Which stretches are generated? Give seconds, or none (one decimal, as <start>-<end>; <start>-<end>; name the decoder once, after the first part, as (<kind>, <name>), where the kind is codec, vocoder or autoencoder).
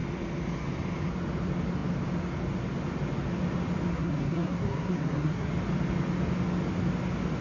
3.9-5.5 (codec, SNAC)